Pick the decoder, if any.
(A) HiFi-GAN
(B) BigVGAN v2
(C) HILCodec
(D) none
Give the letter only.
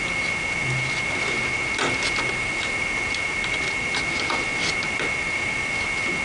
D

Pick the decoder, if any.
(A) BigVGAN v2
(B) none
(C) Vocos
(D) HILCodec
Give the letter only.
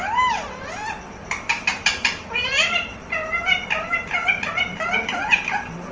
A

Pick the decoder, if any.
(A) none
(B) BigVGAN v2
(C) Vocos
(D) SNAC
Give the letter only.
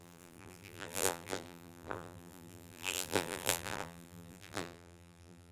B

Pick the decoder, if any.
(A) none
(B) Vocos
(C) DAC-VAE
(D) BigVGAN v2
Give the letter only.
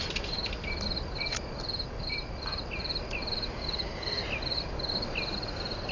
A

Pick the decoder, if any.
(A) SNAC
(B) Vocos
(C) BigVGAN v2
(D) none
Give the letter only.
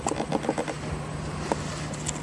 D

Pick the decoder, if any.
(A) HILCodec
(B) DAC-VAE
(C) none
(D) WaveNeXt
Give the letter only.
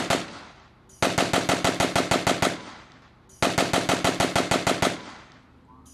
C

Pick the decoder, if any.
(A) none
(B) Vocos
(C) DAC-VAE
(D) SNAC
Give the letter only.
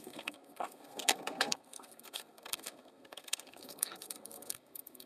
D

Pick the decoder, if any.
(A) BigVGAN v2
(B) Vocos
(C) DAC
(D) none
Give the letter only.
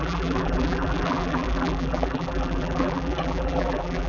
A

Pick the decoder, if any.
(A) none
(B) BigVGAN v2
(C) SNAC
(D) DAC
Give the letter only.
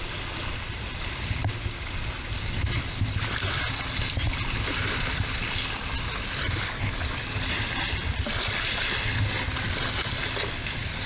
A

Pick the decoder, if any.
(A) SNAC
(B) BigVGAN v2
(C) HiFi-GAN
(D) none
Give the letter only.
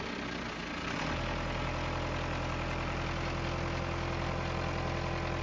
D